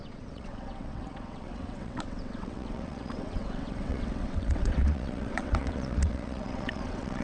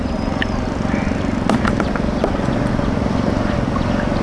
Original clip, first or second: second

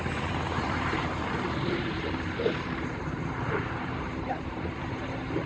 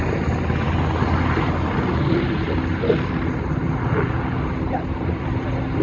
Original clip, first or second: second